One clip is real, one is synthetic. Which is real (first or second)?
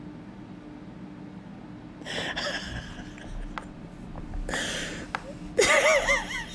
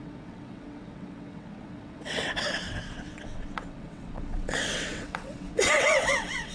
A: first